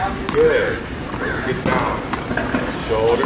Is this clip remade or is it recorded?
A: recorded